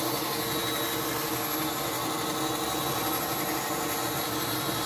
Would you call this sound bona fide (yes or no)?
yes